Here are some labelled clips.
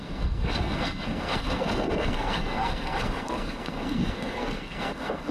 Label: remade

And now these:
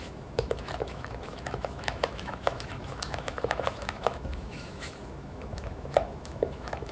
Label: remade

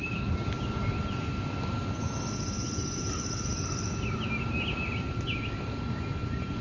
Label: recorded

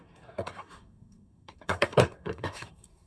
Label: remade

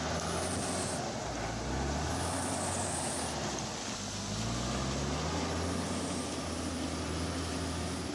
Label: recorded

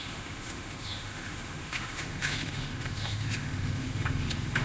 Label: remade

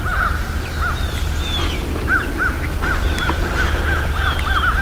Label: recorded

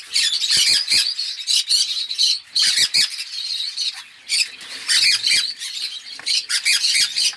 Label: recorded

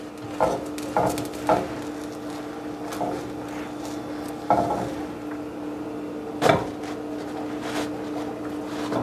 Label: recorded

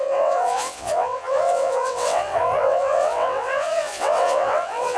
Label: remade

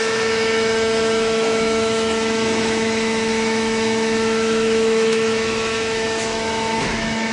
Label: remade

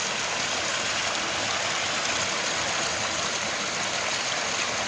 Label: recorded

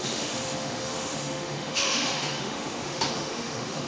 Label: remade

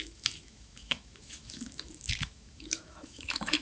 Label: remade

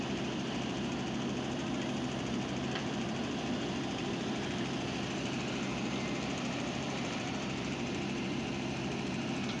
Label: remade